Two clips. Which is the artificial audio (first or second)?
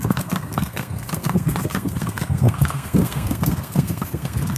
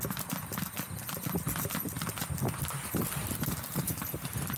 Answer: first